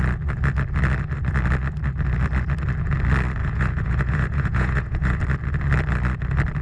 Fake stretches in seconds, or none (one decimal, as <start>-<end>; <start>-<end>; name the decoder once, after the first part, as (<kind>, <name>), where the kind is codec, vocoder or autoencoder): 3.4-5.2 (vocoder, Vocos)